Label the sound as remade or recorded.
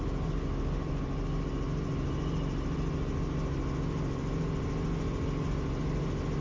recorded